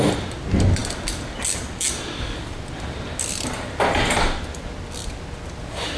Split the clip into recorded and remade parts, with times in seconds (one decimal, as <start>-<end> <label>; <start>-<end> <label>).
0.0-6.0 recorded